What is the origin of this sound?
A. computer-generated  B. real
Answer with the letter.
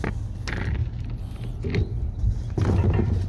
B